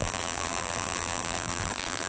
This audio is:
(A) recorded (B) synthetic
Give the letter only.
B